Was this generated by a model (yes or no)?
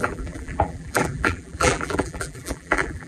yes